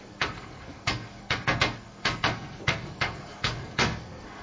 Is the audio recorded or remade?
remade